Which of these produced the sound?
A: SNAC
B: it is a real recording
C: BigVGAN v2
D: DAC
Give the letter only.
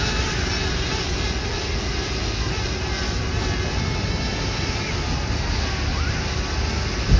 B